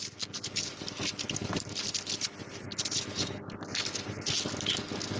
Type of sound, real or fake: real